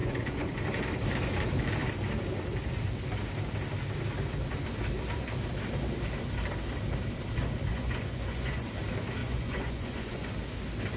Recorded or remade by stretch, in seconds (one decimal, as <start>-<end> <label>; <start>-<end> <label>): 0.0-0.6 remade; 0.6-7.7 recorded; 7.7-8.7 remade; 8.7-9.2 recorded; 9.2-10.3 remade; 10.3-11.0 recorded